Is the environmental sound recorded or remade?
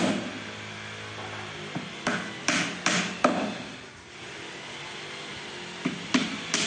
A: recorded